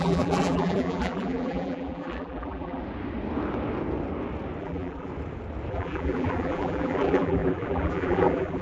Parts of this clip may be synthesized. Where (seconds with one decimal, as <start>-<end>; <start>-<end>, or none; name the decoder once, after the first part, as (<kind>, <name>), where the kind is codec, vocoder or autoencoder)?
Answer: 0.0-2.8 (vocoder, BigVGAN v2); 4.6-5.1; 5.7-8.6